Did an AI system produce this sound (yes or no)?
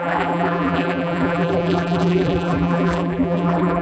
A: yes